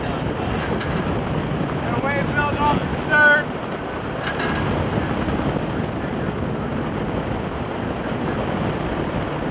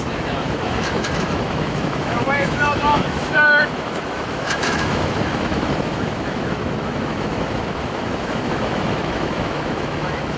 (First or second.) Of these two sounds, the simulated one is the second